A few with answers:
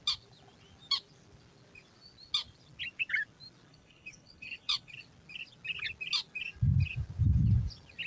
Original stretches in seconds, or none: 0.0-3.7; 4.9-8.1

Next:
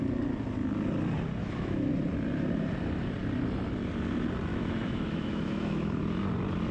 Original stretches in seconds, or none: 0.0-1.4; 1.9-4.5; 6.0-6.7